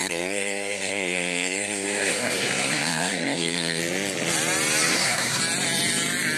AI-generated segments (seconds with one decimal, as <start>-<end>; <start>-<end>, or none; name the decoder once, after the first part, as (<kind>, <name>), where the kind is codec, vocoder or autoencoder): 0.0-3.8 (codec, SNAC); 4.9-5.4